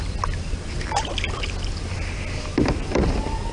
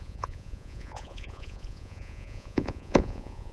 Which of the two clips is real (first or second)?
first